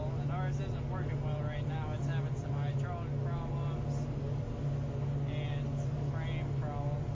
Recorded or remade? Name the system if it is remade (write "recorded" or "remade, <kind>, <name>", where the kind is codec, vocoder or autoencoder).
recorded